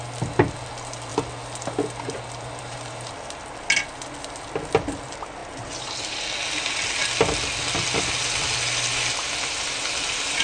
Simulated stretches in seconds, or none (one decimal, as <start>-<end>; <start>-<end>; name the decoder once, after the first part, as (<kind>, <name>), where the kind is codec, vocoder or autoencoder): none